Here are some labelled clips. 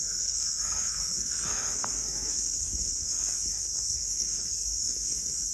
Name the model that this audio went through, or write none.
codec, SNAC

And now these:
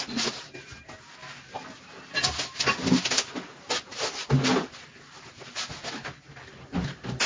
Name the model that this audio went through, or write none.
none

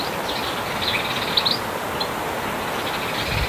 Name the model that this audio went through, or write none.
none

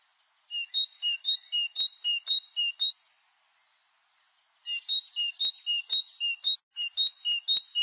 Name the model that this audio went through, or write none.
none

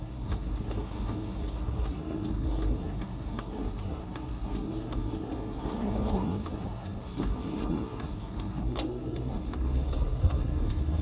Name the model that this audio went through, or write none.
codec, SNAC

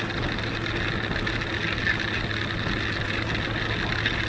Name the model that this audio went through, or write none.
none